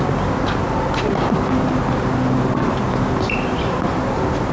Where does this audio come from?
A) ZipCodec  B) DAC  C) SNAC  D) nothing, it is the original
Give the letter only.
D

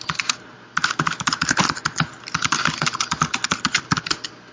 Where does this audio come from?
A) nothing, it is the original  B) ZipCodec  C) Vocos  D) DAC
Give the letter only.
A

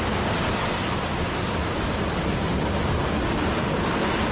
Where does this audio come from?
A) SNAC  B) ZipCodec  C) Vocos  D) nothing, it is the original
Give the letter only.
D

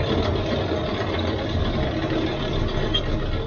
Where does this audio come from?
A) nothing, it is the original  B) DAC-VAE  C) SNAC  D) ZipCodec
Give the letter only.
A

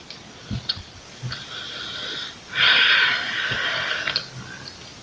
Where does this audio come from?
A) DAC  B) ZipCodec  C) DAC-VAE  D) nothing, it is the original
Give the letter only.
D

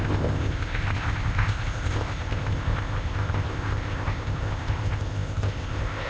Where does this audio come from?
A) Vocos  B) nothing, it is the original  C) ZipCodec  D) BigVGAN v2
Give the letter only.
C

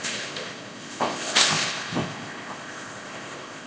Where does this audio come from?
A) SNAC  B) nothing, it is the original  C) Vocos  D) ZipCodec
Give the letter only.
D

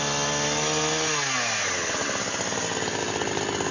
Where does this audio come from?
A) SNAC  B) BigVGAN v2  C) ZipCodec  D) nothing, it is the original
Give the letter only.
D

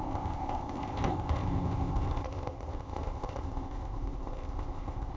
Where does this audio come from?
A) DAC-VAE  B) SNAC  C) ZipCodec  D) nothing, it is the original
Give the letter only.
C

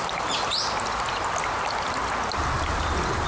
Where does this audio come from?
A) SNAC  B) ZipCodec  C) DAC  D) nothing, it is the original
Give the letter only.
D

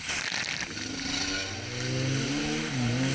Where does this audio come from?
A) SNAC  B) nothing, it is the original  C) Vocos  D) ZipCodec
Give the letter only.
B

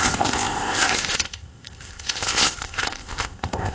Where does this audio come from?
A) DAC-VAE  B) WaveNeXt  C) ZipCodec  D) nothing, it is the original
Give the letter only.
C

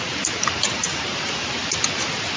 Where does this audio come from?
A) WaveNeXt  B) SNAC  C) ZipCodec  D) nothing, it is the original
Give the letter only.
D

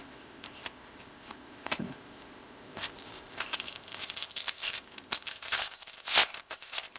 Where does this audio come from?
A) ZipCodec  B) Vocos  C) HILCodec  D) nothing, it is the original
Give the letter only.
A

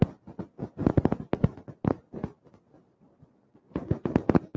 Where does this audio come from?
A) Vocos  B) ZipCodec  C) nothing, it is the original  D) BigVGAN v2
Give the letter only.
C